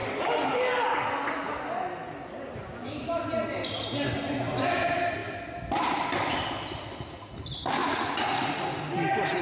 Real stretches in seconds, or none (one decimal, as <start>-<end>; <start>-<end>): 0.0-7.8; 8.8-9.4